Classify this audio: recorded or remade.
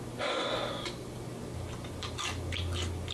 recorded